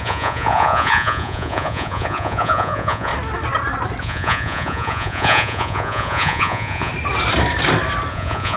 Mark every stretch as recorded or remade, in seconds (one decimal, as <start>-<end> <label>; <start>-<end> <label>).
0.0-3.1 remade; 3.1-4.0 recorded; 4.0-6.9 remade; 6.9-8.1 recorded; 8.1-8.6 remade